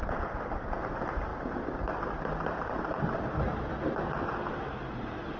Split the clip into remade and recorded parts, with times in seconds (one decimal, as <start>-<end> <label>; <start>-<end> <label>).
0.0-5.4 recorded